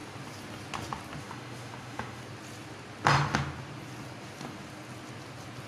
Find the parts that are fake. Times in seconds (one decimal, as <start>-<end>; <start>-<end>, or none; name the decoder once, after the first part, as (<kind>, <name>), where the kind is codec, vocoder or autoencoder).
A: 1.2-2.2 (autoencoder, DAC-VAE)